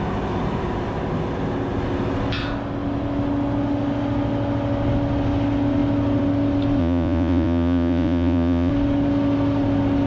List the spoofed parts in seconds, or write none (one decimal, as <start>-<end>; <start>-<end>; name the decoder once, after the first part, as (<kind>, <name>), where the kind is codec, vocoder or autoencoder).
6.8-8.7 (vocoder, Vocos)